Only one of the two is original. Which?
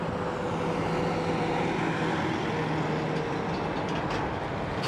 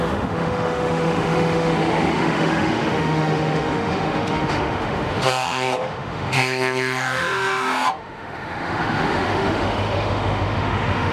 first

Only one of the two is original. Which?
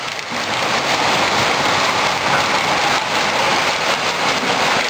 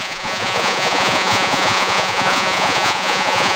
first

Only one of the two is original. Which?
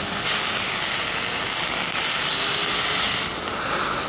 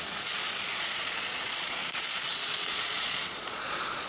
first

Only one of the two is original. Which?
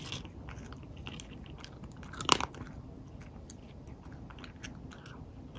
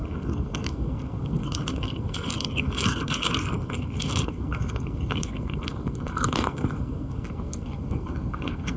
first